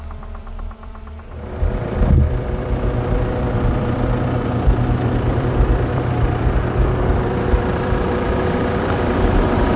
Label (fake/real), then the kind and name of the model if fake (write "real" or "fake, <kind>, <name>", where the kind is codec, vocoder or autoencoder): fake, vocoder, BigVGAN v2